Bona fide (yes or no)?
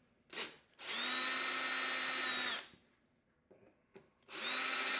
yes